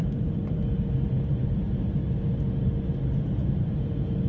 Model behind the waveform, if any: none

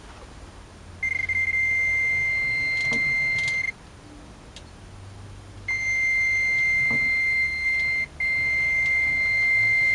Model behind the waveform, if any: none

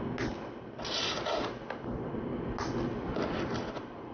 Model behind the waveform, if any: none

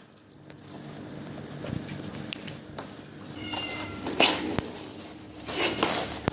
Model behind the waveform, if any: none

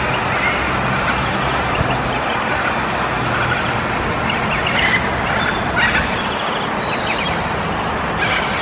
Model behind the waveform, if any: none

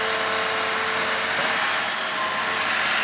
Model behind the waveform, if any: none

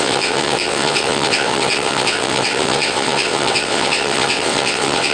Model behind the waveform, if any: vocoder, WaveNeXt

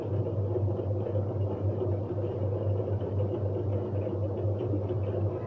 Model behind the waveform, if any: none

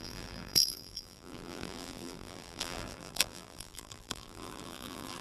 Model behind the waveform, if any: vocoder, BigVGAN v2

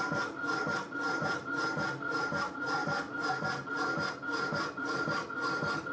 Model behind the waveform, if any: none